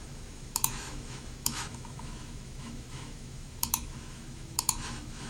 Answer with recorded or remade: remade